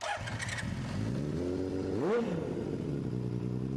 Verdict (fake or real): real